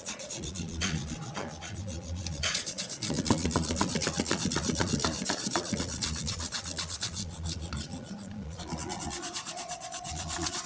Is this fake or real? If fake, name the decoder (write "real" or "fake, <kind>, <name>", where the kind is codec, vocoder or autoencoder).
fake, vocoder, Vocos